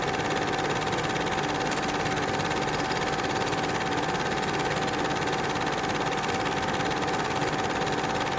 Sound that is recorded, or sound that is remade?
recorded